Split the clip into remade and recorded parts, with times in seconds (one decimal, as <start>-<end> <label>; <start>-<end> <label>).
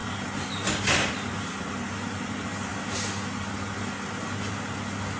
0.0-5.2 recorded